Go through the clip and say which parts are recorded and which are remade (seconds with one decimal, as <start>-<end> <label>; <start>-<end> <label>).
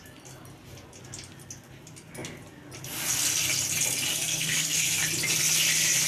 0.0-4.1 recorded; 4.1-5.0 remade; 5.0-6.1 recorded